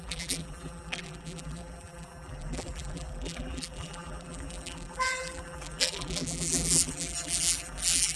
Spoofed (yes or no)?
yes